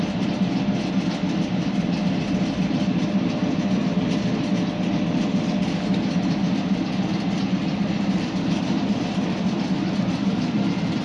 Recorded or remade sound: remade